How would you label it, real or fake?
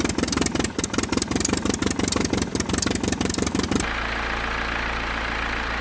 real